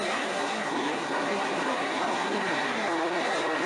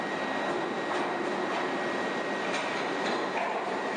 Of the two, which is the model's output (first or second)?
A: first